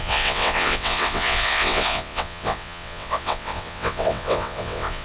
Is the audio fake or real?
fake